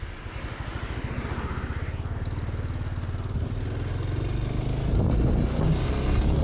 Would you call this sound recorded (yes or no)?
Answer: yes